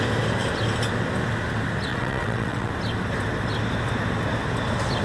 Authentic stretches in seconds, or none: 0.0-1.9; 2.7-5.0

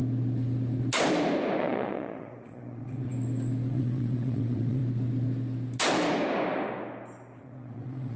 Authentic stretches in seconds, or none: 0.0-1.6; 3.1-3.7; 4.8-7.4

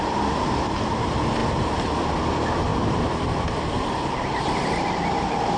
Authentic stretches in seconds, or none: 0.0-5.6

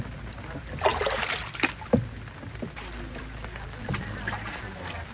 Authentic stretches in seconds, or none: 0.0-5.1